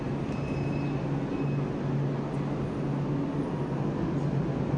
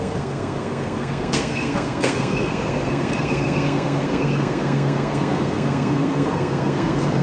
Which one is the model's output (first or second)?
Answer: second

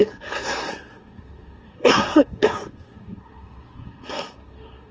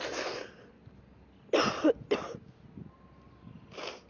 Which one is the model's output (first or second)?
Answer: first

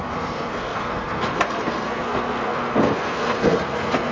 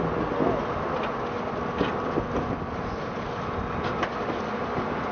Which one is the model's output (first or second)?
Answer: first